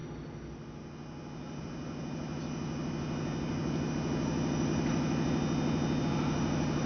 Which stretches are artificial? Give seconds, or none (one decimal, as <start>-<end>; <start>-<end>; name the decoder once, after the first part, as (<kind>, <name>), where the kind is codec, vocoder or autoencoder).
none